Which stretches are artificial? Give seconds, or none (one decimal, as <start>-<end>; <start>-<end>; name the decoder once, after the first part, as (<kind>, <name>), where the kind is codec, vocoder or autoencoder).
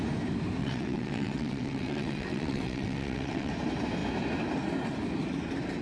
0.6-3.5 (vocoder, WaveNeXt)